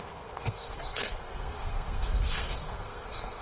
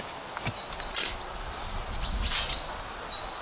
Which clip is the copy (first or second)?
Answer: first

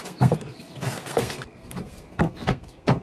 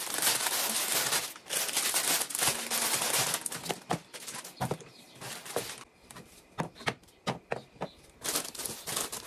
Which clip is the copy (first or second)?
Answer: first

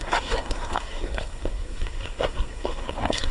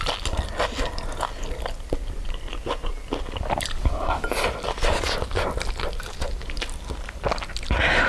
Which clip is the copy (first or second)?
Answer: first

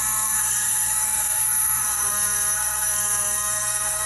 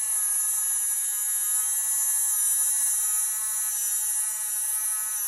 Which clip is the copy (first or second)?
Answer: first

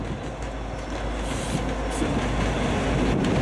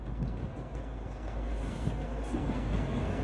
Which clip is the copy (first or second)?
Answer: second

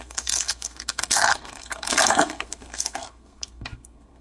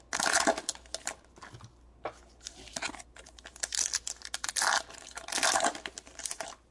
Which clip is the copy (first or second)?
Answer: first